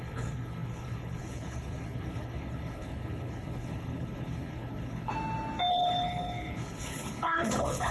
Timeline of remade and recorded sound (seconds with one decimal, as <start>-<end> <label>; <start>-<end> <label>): 0.0-5.1 remade; 5.1-5.7 recorded; 5.7-7.9 remade